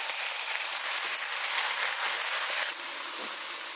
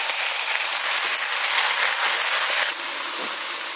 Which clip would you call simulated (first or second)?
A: first